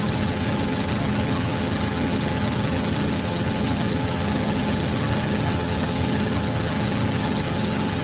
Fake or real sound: fake